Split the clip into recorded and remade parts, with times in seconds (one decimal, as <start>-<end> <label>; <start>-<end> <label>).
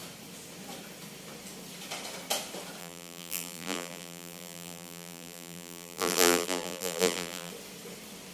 0.0-2.8 recorded; 2.8-7.5 remade; 7.5-8.3 recorded